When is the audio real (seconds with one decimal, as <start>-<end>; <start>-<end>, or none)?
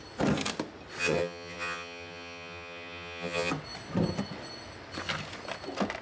0.0-1.0; 3.5-6.0